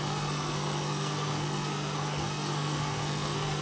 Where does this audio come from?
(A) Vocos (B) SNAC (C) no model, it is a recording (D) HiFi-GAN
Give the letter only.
B